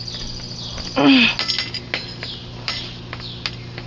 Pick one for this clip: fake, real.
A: real